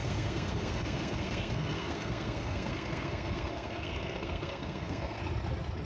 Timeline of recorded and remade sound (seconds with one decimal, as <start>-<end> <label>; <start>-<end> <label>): 0.0-5.2 remade; 5.2-5.9 recorded